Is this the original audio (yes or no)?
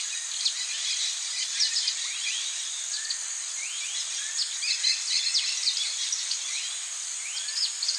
yes